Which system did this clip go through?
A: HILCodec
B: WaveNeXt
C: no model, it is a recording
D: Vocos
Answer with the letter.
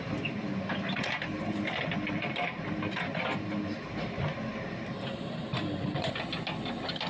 C